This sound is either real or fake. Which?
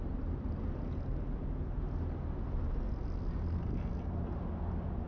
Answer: real